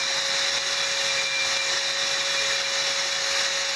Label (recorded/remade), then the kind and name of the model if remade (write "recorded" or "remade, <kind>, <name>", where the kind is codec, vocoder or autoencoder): recorded